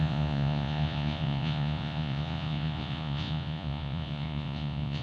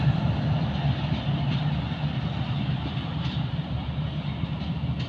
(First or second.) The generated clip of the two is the first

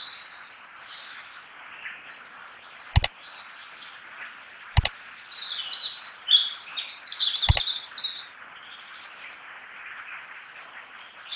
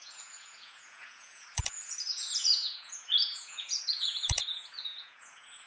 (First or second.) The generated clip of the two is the second